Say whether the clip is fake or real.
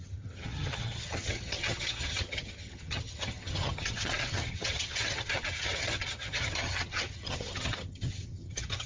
fake